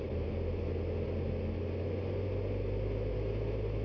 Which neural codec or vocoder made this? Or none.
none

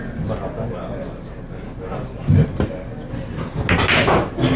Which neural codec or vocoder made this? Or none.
none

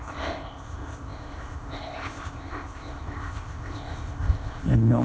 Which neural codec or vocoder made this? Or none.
codec, ZipCodec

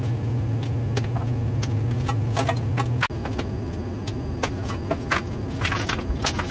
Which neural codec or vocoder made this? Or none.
none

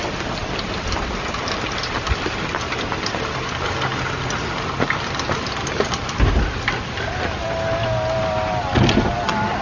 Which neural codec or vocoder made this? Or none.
none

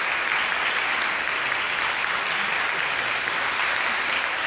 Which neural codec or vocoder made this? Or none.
none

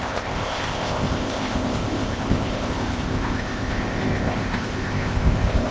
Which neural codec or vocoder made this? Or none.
codec, ZipCodec